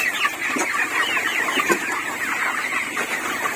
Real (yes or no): yes